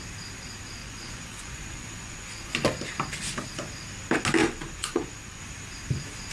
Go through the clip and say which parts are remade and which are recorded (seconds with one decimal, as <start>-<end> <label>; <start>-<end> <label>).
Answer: 0.0-0.8 recorded; 0.8-2.5 remade; 2.5-4.4 recorded; 4.4-5.4 remade; 5.4-6.3 recorded